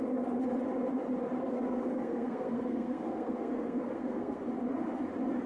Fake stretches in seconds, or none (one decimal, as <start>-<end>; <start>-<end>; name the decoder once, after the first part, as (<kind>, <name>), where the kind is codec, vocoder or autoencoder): 1.4-4.4 (codec, SNAC)